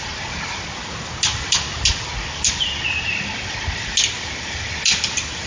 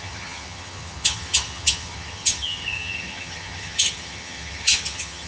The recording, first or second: first